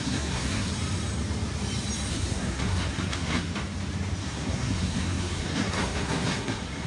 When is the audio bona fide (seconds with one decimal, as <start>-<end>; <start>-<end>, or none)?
0.7-2.1; 3.5-4.2